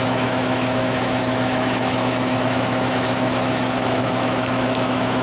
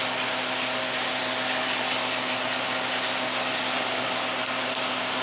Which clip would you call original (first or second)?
second